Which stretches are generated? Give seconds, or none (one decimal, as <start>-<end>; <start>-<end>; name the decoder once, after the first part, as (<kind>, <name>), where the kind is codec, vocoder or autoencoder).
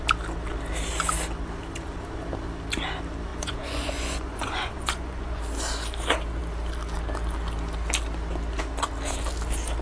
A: 3.3-5.4 (vocoder, Vocos)